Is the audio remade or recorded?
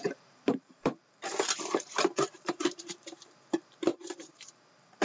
remade